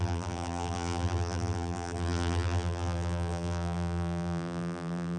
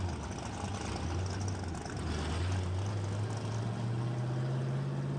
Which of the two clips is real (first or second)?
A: second